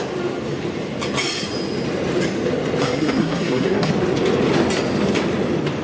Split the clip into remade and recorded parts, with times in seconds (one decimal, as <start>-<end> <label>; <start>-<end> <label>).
0.0-2.8 recorded; 2.8-3.9 remade; 3.9-5.8 recorded